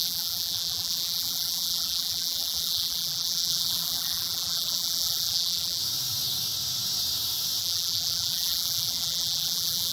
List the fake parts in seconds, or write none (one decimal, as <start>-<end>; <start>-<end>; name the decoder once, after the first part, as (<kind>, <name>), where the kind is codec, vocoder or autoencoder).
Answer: 0.0-5.8 (vocoder, BigVGAN v2); 7.6-9.9